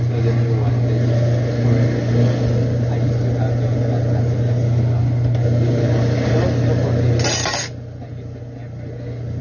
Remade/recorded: recorded